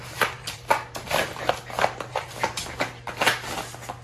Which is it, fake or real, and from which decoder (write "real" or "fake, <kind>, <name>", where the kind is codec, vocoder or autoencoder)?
real